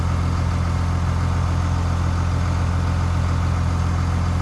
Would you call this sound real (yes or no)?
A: yes